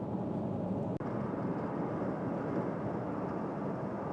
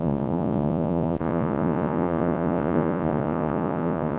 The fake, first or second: second